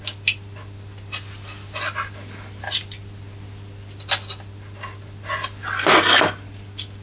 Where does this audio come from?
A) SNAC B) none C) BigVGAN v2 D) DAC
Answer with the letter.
B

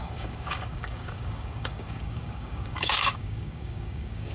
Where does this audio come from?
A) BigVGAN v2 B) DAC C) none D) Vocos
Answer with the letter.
B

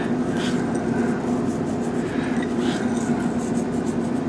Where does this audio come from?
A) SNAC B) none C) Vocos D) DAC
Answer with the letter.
B